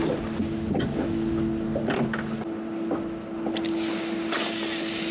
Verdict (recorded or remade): recorded